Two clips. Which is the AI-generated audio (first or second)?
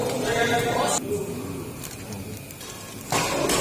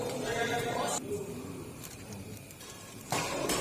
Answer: second